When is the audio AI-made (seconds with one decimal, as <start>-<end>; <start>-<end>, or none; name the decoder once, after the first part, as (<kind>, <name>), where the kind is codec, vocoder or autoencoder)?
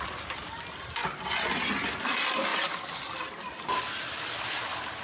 none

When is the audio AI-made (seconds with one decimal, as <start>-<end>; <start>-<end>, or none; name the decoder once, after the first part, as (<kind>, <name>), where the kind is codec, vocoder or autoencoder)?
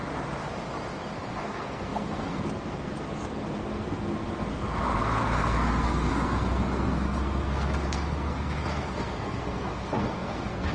1.4-10.7 (codec, SNAC)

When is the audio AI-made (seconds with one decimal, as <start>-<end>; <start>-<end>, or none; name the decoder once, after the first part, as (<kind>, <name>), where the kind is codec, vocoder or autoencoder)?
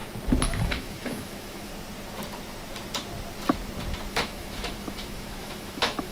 0.5-1.7 (autoencoder, DAC-VAE); 4.1-6.1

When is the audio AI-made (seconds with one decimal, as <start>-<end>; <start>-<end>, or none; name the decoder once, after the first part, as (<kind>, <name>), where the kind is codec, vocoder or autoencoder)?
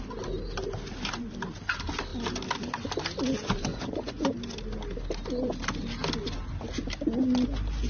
3.7-4.3 (vocoder, Vocos)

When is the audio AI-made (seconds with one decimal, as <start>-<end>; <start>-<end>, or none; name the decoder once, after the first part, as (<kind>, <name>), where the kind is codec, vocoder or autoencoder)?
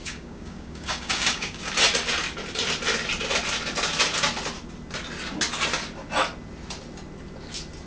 0.0-1.7 (codec, DAC)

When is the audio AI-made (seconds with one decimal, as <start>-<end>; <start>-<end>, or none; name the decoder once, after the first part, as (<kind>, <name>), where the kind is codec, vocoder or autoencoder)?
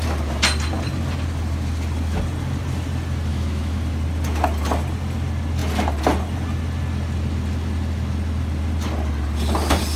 3.3-3.8 (autoencoder, DAC-VAE)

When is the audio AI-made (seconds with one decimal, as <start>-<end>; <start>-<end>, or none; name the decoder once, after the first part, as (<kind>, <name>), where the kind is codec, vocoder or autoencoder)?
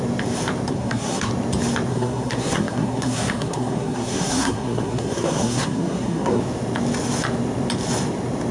0.7-1.3 (codec, SNAC); 1.9-6.4